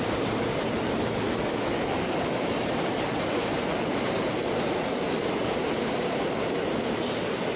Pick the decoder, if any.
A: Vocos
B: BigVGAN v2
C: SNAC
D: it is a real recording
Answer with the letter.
B